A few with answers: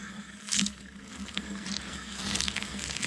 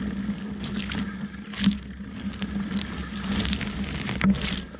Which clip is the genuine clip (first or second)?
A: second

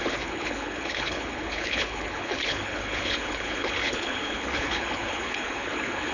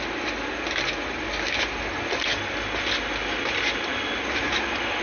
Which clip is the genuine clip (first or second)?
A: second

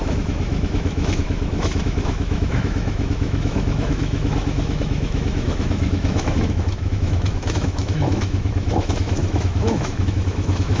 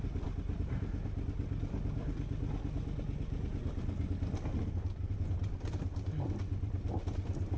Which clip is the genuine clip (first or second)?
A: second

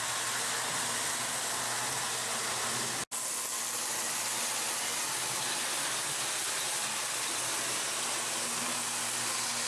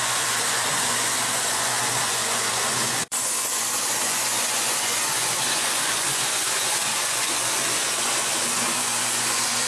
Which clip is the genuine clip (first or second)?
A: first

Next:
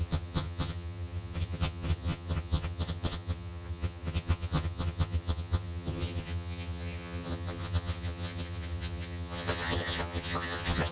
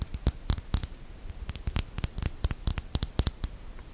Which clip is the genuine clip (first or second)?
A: second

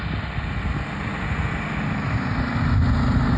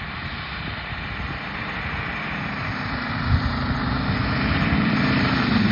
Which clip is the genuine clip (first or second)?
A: first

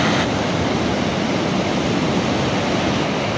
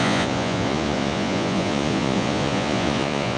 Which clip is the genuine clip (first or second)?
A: first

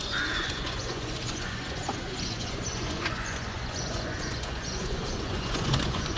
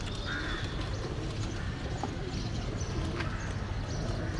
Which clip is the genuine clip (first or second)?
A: second